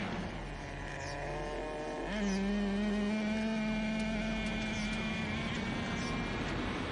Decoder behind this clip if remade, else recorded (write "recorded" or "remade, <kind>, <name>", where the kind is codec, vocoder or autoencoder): recorded